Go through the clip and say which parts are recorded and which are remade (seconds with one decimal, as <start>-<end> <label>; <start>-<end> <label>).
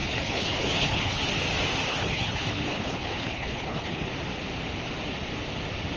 0.0-1.3 remade; 1.3-1.9 recorded; 1.9-4.1 remade; 4.1-6.0 recorded